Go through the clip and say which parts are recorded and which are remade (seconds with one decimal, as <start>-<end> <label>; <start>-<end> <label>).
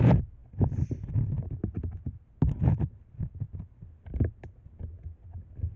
0.0-5.8 recorded